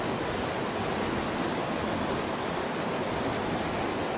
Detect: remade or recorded recorded